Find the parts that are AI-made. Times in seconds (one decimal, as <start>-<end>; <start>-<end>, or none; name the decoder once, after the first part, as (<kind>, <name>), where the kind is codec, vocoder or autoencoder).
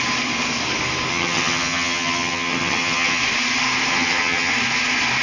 1.1-3.2 (vocoder, HiFi-GAN); 3.9-4.5